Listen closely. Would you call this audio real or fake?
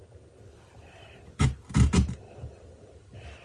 fake